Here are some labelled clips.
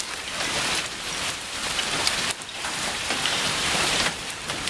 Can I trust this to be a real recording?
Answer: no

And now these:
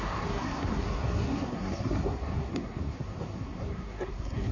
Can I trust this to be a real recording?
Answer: no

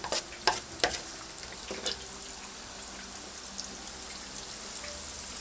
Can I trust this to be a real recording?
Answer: yes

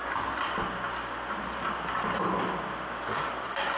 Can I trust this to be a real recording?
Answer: yes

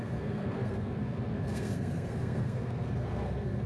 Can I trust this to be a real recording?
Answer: no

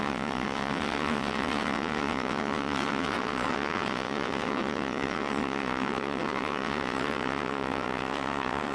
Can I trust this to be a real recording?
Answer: no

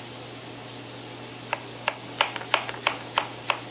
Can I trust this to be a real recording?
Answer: yes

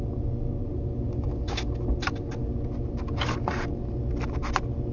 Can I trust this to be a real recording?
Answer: yes